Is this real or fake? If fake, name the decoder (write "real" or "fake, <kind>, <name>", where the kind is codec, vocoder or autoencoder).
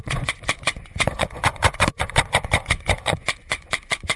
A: fake, vocoder, Vocos